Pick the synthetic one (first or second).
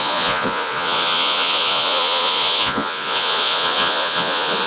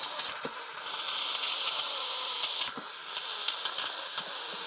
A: first